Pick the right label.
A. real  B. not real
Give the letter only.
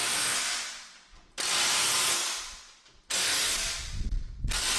A